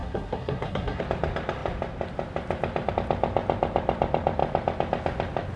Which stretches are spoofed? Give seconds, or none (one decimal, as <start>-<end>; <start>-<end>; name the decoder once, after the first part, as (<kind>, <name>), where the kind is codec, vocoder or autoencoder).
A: 0.0-1.0 (codec, SNAC)